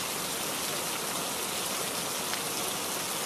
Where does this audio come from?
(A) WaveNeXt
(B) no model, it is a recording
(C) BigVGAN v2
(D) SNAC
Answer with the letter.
B